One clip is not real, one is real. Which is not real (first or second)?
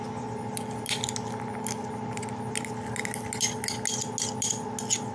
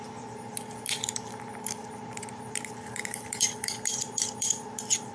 second